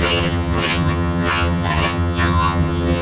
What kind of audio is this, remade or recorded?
remade